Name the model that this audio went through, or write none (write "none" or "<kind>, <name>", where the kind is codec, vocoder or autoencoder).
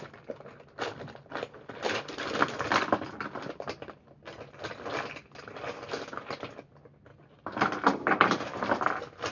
none